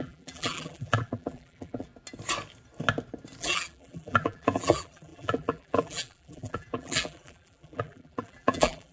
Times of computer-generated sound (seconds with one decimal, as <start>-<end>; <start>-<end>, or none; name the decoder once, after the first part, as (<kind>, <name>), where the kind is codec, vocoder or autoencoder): 0.0-1.9 (vocoder, BigVGAN v2); 3.4-8.9